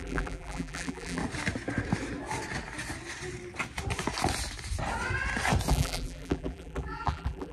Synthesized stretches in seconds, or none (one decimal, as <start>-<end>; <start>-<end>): 0.0-1.2; 5.7-7.5